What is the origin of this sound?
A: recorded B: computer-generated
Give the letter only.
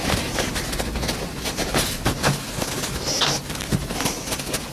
A